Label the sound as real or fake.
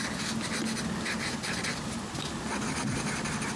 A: real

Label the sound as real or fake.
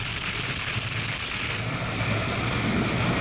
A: real